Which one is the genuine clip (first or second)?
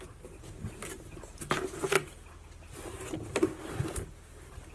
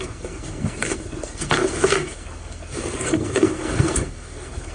first